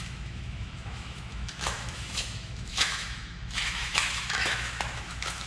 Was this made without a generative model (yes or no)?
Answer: no